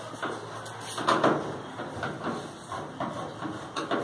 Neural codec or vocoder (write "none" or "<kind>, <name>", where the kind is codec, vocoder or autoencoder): none